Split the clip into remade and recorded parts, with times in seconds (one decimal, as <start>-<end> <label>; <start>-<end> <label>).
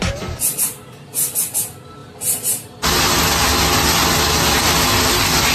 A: 0.0-5.5 recorded